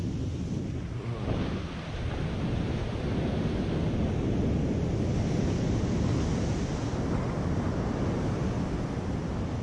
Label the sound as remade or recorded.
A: recorded